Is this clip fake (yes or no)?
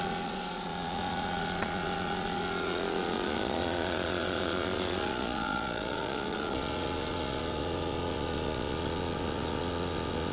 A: yes